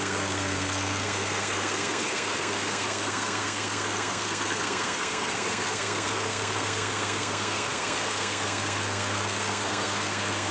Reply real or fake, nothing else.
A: fake